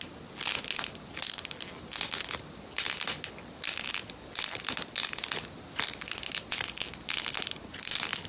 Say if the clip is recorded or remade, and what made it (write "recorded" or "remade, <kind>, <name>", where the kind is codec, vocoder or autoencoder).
recorded